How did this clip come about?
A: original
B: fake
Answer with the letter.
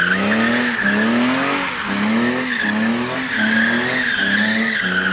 A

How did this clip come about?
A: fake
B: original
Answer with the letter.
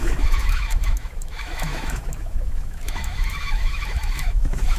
A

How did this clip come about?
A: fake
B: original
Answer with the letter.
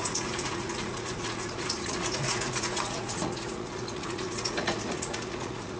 A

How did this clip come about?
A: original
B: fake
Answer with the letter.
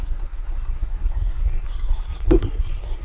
B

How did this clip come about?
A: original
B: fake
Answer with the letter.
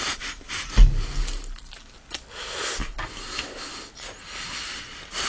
A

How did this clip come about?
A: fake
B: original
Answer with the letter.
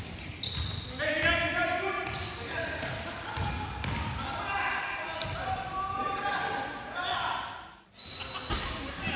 B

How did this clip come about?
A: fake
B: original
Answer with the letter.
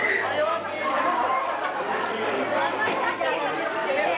B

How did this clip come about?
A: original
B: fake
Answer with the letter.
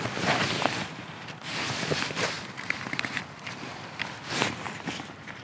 B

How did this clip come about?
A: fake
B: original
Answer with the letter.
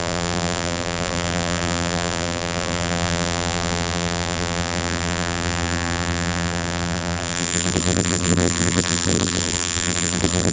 A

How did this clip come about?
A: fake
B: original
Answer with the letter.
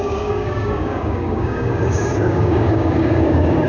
A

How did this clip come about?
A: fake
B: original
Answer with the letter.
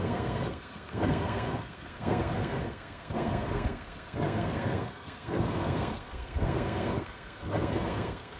A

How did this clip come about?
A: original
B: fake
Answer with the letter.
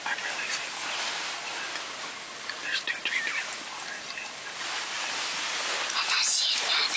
A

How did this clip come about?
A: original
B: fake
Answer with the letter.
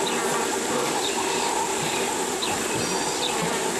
B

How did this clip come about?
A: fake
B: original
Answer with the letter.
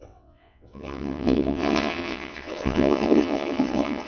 A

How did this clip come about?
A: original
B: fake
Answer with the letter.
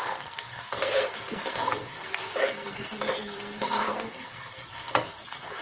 B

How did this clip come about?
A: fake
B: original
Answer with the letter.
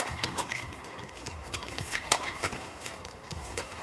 A